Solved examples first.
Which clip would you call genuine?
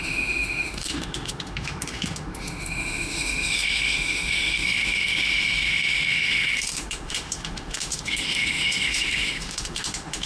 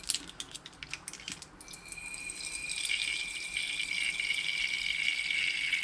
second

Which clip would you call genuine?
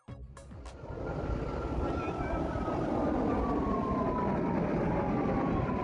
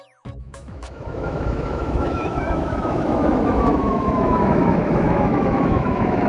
first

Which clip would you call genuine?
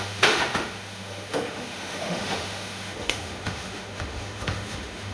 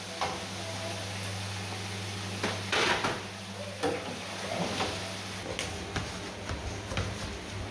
second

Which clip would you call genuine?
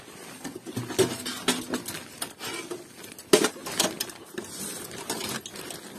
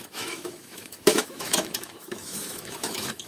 first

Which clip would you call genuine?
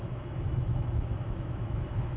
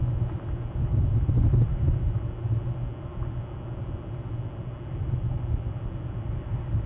second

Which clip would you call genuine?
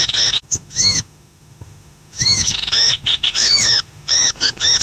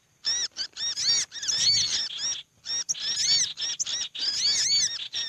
second